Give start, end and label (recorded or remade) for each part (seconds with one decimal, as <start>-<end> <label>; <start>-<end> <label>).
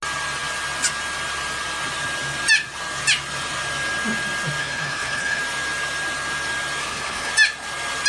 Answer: 0.0-4.6 recorded; 4.6-5.4 remade; 5.4-6.8 recorded; 6.8-7.3 remade; 7.3-8.1 recorded